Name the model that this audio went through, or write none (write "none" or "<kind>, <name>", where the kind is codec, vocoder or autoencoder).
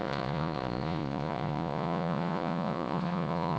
vocoder, Vocos